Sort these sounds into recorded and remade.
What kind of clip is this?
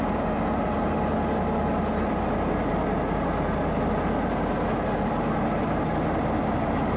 recorded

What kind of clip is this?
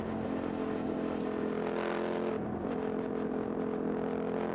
recorded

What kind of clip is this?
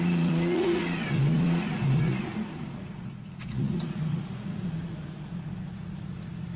remade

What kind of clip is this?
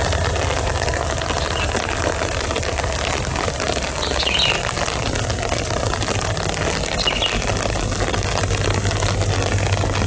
recorded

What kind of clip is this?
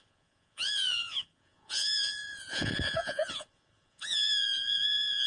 remade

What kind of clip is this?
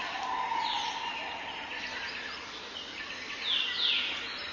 recorded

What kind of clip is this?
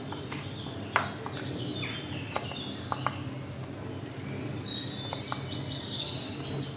recorded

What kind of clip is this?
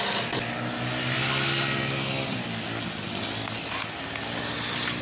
recorded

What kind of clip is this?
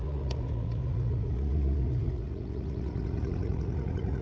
remade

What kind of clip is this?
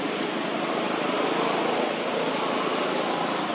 recorded